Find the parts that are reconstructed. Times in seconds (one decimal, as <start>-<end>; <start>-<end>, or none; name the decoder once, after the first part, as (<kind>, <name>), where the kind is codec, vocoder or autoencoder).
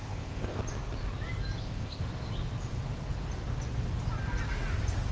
0.0-0.6 (codec, ZipCodec); 1.6-2.0